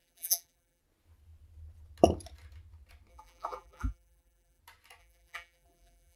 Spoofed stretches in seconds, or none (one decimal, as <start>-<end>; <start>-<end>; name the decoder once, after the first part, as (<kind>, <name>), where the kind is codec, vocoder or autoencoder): 0.0-0.8 (vocoder, BigVGAN v2); 3.1-4.6; 5.0-6.2